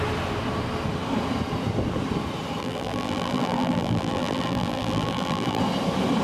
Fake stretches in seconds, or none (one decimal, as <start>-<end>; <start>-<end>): 2.6-5.6